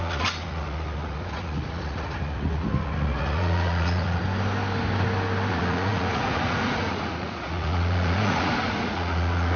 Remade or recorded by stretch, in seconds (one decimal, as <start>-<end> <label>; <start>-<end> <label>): 0.0-4.2 remade; 4.2-5.5 recorded; 5.5-9.6 remade